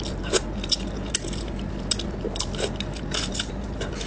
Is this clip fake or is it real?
real